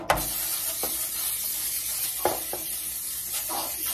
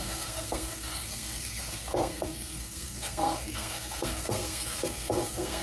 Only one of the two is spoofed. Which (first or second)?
second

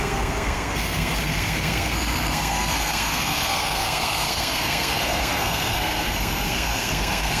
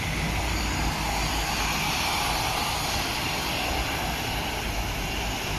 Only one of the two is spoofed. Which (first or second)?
first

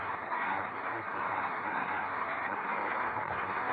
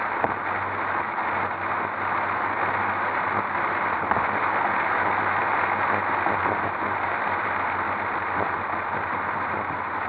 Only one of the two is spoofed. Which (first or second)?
first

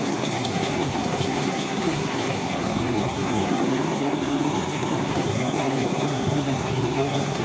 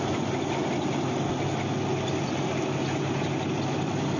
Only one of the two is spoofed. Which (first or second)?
first